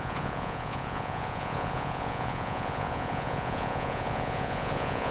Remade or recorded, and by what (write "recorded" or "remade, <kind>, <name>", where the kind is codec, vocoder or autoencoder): remade, vocoder, Vocos